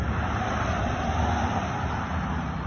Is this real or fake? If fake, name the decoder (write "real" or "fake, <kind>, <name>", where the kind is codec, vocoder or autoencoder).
fake, vocoder, BigVGAN v2